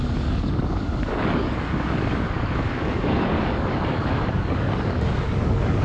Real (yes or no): no